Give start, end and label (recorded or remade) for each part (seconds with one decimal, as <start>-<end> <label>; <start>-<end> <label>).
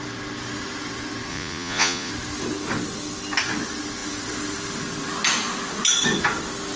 0.0-1.3 recorded; 1.3-2.1 remade; 2.1-6.8 recorded